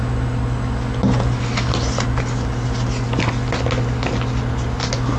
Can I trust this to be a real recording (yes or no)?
yes